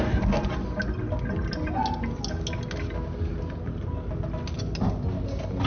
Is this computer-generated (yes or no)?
no